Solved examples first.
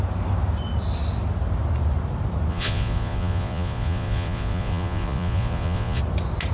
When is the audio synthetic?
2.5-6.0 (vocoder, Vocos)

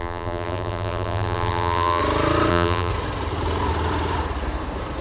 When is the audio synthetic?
0.0-2.0 (vocoder, BigVGAN v2); 2.5-2.9

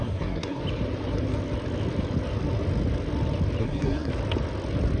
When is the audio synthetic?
0.0-0.6 (codec, SNAC); 3.6-4.1

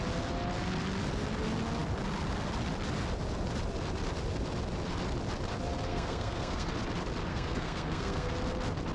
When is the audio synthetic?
5.9-6.7 (codec, SNAC); 7.3-8.3